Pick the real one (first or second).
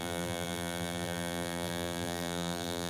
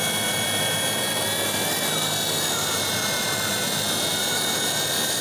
second